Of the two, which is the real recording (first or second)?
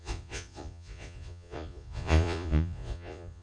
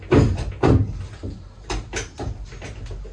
second